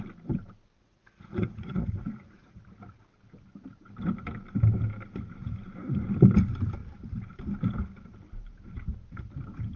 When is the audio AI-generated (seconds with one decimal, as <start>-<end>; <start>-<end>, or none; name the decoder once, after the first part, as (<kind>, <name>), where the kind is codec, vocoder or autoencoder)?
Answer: 0.8-2.6 (vocoder, Vocos)